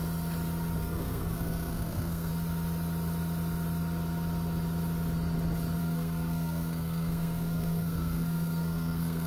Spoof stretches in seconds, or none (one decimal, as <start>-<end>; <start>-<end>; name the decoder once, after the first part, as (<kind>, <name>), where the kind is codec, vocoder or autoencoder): 0.8-2.3 (codec, SNAC); 5.8-9.3